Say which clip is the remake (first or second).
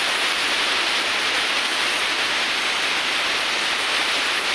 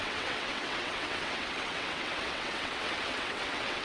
second